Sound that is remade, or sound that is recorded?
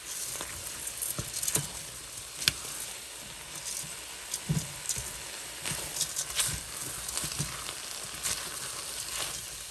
recorded